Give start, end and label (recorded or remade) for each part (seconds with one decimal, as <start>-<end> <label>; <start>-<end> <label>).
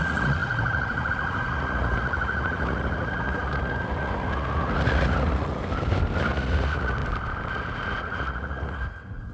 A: 0.0-5.6 remade; 5.6-6.2 recorded; 6.2-7.0 remade; 7.0-7.5 recorded; 7.5-9.3 remade